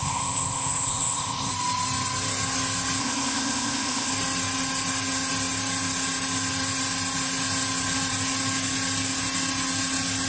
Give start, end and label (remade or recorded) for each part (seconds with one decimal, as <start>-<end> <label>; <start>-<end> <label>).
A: 0.0-1.5 remade; 1.5-3.0 recorded; 3.0-4.1 remade; 4.1-10.3 recorded